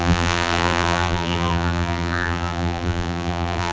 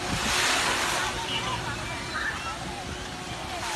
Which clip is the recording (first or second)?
second